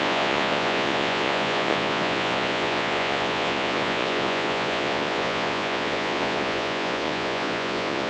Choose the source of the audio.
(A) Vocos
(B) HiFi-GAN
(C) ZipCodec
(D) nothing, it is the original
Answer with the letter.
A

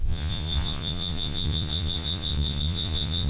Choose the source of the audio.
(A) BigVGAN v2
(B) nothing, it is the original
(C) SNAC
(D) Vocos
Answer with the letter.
D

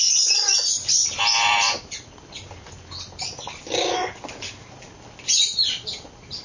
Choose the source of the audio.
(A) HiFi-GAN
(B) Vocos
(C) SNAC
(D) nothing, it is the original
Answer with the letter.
D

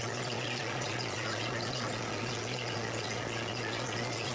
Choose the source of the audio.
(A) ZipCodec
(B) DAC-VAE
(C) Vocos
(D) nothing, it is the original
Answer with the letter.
C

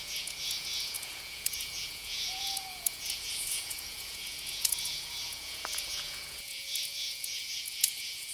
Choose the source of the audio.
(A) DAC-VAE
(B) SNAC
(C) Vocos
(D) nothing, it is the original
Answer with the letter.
C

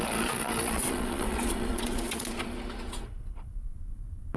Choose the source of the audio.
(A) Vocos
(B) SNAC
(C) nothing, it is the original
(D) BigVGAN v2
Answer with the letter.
A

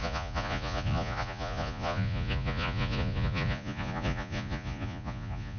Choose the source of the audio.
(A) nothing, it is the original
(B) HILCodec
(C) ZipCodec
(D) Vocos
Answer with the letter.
D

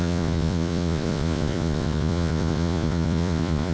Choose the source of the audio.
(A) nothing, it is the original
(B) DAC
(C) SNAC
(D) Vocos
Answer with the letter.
D